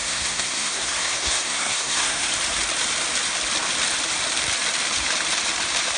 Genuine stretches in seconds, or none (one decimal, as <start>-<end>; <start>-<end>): 2.3-6.0

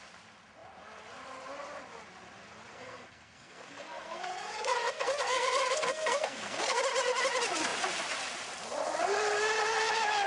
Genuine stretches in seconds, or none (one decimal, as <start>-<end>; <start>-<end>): 0.0-2.7; 6.8-10.3

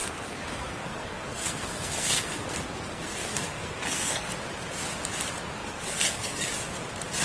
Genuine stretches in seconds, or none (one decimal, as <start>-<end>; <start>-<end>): 4.3-5.6; 6.5-7.2

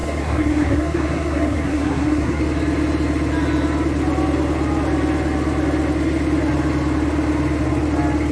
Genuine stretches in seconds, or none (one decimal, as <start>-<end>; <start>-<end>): 2.4-8.3

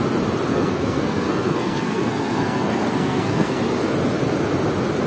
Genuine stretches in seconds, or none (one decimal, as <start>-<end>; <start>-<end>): 0.0-0.5; 3.6-5.1

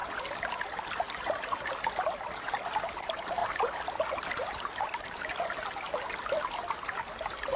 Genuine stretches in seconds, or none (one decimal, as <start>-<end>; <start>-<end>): 0.0-7.6

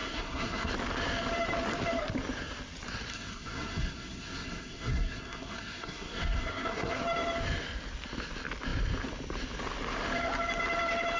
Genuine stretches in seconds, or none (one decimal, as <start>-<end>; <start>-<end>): 0.7-3.1; 7.0-11.2